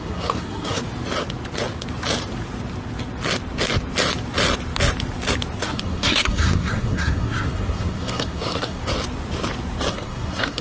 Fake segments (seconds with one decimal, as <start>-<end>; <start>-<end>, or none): 0.0-0.8; 5.6-8.8; 9.9-10.6